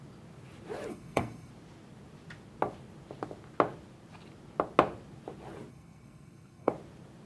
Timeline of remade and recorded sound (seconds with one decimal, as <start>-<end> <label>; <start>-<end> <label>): 0.0-0.9 recorded; 0.9-1.5 remade; 1.5-5.7 recorded; 5.7-6.7 remade; 6.7-7.3 recorded